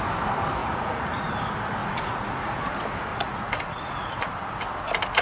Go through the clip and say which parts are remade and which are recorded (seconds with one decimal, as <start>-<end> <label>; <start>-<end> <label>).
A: 0.0-0.6 recorded; 0.6-1.3 remade; 1.3-1.8 recorded; 1.8-2.7 remade; 2.7-3.1 recorded; 3.1-4.3 remade; 4.3-5.2 recorded